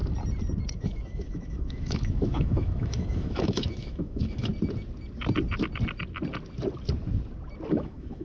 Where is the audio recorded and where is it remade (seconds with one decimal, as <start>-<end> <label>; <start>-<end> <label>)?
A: 0.0-0.7 recorded; 0.7-4.5 remade; 4.5-7.7 recorded; 7.7-8.2 remade